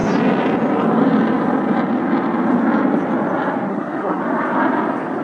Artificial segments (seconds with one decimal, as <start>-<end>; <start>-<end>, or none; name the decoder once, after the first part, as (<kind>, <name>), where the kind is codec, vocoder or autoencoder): 3.7-4.2 (codec, SNAC)